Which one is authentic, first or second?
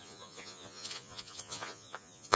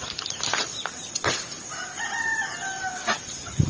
second